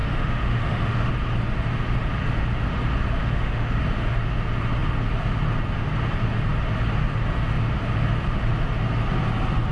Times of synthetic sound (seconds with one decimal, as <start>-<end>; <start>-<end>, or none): 0.0-1.1; 3.2-3.8